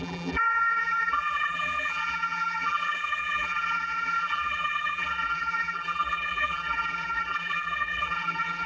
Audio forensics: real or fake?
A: fake